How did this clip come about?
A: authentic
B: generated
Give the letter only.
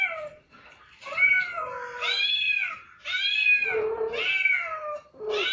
A